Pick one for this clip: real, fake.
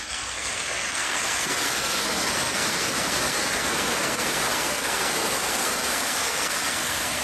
fake